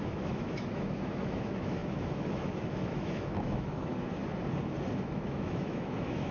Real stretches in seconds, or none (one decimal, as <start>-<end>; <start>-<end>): 4.2-5.0